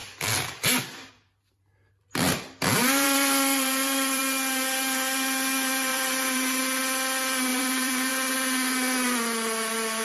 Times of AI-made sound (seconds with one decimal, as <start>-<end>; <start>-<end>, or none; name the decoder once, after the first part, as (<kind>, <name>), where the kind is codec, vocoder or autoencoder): 0.0-1.1 (vocoder, BigVGAN v2); 2.8-4.2; 5.9-6.6; 7.5-8.1